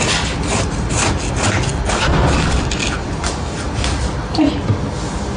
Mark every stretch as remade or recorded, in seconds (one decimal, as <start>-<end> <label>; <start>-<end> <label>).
0.0-5.4 recorded